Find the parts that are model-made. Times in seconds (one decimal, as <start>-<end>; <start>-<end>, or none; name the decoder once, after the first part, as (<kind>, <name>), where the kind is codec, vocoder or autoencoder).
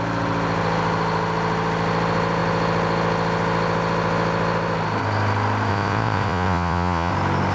5.7-7.1 (vocoder, Vocos)